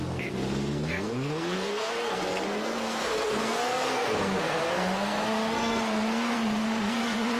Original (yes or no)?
no